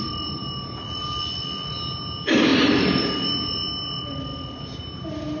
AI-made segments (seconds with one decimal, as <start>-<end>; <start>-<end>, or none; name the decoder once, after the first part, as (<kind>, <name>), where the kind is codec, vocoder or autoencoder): none